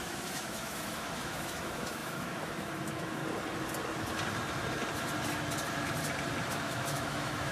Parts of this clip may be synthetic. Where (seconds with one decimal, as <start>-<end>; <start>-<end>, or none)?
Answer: 0.0-3.2; 6.5-7.5